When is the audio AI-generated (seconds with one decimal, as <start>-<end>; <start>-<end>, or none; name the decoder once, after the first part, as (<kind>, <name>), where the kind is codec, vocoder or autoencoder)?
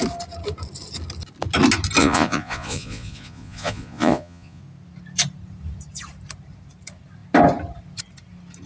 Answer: 2.0-4.6 (vocoder, Vocos)